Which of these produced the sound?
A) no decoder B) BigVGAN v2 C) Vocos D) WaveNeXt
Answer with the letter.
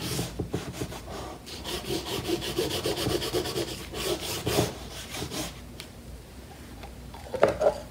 B